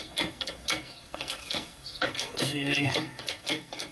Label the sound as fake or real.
fake